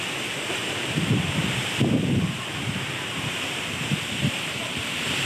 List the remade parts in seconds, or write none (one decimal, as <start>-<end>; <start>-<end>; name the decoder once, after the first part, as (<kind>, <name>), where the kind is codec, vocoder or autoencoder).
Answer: 0.6-3.8 (vocoder, BigVGAN v2); 4.6-5.3